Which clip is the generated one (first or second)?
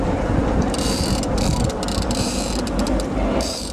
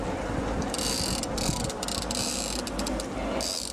first